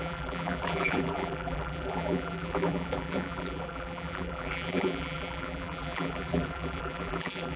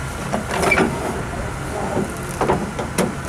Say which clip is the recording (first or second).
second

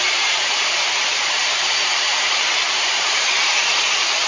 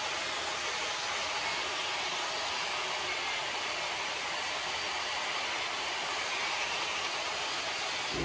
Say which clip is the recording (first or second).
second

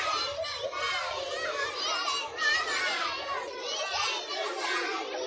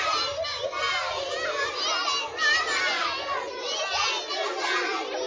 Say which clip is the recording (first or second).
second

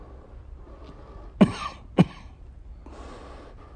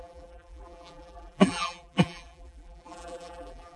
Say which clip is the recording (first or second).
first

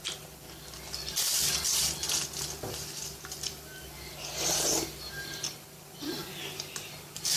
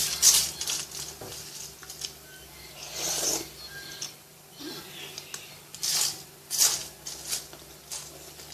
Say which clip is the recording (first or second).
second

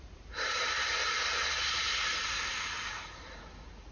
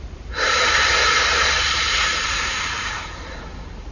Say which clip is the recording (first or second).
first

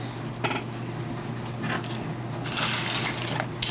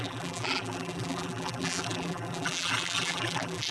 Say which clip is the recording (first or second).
first